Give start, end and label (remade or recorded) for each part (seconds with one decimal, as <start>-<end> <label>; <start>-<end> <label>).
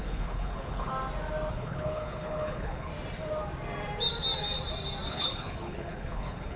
0.0-0.9 remade; 0.9-1.5 recorded; 1.5-2.9 remade; 2.9-5.1 recorded; 5.1-6.6 remade